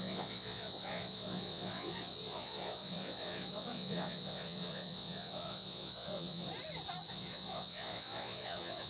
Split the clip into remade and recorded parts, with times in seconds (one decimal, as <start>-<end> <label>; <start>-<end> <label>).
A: 0.0-6.5 remade; 6.5-7.1 recorded; 7.1-8.9 remade